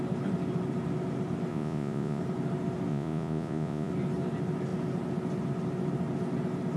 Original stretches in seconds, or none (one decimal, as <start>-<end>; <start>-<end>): 0.0-1.5; 2.2-2.9; 3.9-6.8